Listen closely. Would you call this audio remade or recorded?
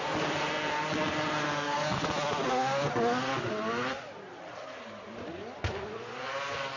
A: recorded